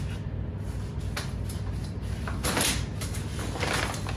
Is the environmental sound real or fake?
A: real